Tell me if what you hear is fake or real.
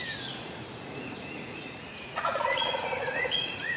fake